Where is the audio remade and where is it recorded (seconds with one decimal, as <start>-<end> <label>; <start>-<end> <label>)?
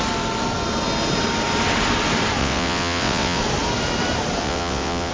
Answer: 0.0-2.4 recorded; 2.4-3.4 remade; 3.4-4.4 recorded; 4.4-5.1 remade